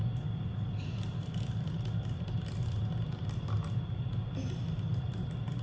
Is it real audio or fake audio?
real